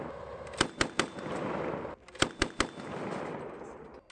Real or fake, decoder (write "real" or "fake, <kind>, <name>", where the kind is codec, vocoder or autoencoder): real